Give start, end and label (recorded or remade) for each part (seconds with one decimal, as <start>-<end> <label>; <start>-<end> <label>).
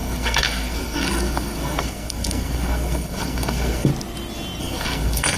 0.0-3.9 remade; 3.9-4.6 recorded; 4.6-5.4 remade